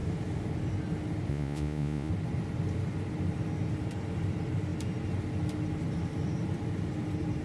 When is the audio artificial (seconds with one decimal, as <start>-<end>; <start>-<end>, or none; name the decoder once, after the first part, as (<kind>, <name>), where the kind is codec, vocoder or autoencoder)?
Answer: 1.3-2.1 (vocoder, Vocos)